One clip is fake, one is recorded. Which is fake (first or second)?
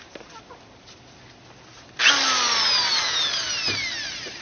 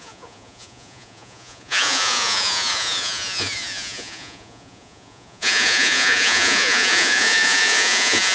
second